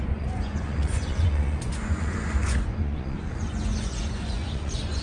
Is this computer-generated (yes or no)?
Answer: yes